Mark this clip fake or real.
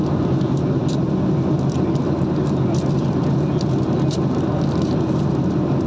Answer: real